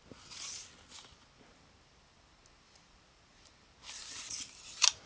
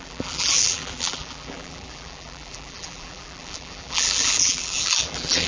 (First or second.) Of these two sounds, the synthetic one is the second